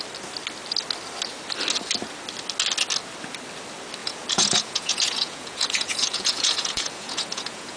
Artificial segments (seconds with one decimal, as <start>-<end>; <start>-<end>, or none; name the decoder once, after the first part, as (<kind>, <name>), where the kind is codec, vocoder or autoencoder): 4.0-7.8 (vocoder, Vocos)